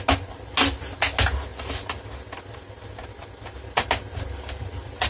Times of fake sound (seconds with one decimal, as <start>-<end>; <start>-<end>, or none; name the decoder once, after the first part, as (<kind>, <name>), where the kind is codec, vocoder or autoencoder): none